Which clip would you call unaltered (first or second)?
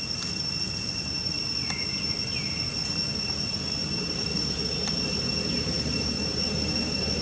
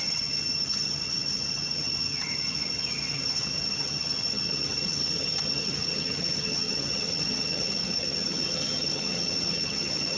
first